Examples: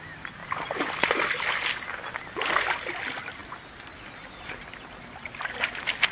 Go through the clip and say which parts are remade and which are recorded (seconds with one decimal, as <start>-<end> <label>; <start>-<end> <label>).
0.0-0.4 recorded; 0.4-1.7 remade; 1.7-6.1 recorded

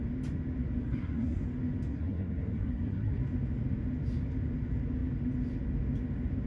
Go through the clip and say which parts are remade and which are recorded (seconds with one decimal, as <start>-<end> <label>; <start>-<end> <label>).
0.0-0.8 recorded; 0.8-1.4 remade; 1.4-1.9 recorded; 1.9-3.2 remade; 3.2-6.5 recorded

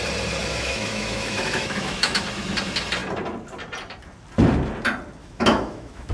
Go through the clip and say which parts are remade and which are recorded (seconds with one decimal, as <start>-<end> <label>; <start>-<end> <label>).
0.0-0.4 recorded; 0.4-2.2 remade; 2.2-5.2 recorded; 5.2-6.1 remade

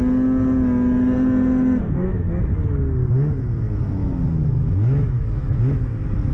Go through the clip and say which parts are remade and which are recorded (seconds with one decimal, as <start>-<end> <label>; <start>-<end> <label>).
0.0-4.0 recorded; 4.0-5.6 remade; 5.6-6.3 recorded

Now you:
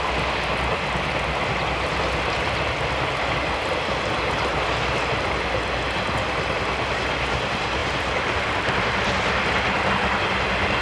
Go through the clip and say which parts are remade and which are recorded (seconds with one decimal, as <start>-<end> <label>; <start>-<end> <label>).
0.0-10.8 recorded